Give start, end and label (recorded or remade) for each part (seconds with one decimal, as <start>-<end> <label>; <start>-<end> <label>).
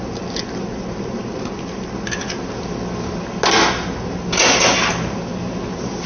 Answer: 0.0-6.1 recorded